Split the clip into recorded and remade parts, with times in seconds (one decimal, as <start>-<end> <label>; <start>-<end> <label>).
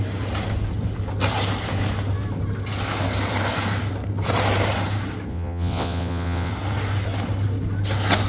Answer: 0.0-5.3 recorded; 5.3-6.5 remade; 6.5-8.3 recorded